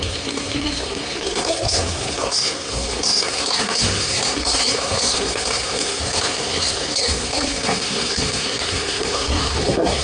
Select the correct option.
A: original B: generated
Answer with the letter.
B